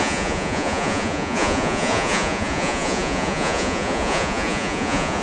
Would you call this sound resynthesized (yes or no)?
yes